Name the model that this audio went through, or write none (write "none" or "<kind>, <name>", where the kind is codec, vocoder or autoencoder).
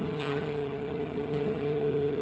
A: vocoder, HiFi-GAN